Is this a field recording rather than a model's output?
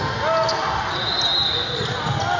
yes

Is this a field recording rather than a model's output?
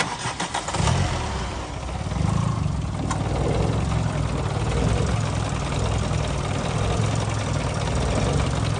yes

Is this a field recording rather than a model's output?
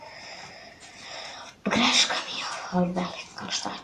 no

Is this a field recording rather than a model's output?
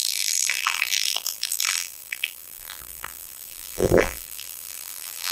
no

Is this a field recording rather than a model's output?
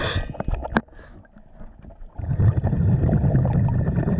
yes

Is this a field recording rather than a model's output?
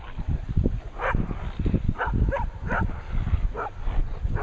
yes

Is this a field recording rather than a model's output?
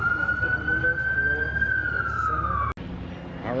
yes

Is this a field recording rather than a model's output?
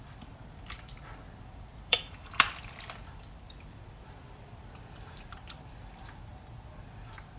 no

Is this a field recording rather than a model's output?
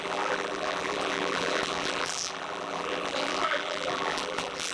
no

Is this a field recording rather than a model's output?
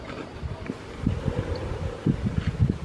no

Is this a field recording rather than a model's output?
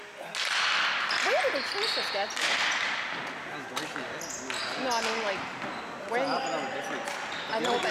yes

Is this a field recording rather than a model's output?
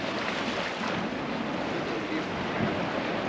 yes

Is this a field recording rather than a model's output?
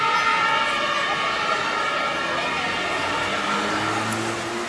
yes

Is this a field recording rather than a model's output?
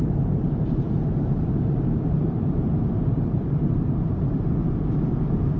no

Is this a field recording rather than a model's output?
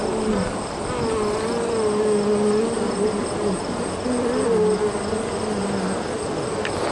yes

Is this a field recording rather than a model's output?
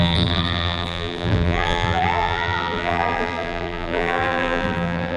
no